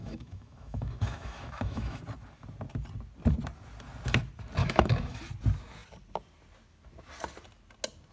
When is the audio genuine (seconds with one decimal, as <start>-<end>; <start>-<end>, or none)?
2.0-4.6; 5.2-8.1